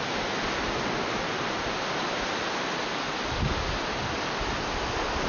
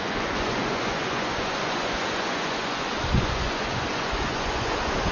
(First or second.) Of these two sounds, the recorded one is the first